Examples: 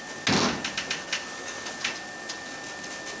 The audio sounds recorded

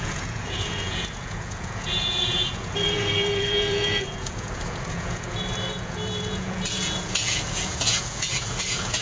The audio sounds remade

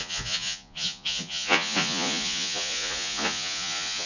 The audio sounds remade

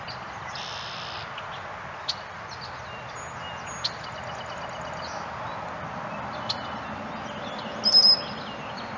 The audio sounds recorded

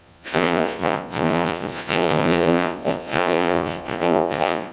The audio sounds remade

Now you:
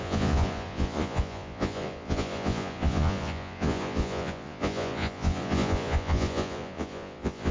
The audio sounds remade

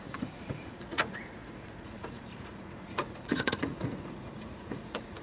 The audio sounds remade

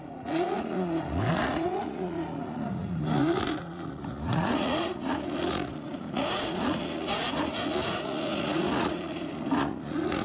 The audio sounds remade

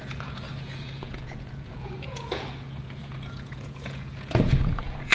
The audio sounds remade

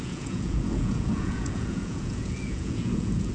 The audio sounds remade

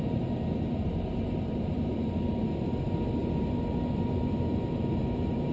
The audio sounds recorded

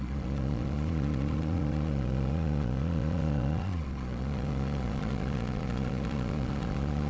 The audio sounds remade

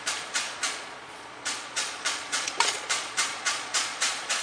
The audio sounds remade